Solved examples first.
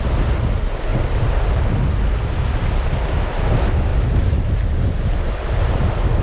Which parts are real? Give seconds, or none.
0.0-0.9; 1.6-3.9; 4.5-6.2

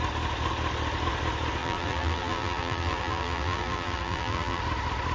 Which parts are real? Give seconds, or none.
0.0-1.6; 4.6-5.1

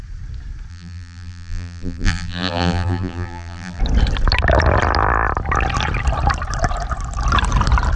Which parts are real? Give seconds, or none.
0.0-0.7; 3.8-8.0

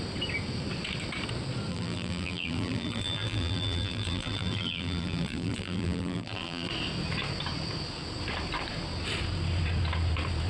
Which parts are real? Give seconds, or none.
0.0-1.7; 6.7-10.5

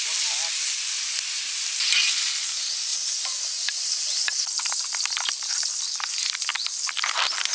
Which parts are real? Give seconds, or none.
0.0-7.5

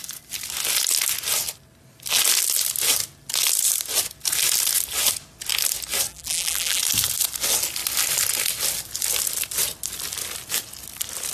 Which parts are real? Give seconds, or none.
0.0-6.1; 6.8-11.3